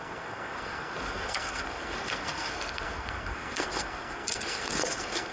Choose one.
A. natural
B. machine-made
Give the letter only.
B